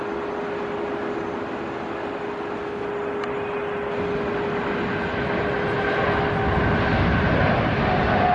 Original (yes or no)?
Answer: yes